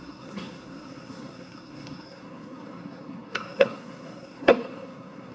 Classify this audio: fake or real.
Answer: fake